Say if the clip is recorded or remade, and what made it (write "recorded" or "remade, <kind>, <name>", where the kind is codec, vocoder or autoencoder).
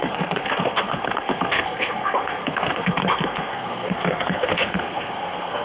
remade, codec, SNAC